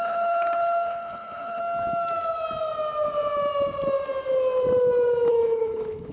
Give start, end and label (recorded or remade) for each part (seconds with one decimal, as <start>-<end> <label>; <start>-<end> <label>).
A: 0.0-1.6 remade; 1.6-5.3 recorded; 5.3-6.1 remade